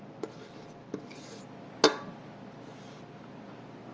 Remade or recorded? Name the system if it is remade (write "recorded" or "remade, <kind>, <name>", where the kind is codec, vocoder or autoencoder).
recorded